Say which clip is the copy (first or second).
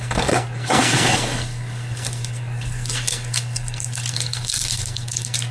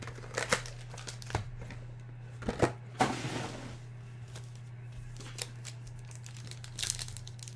first